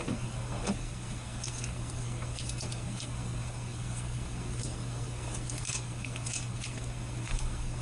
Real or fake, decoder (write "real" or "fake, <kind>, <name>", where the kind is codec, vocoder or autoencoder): fake, codec, SNAC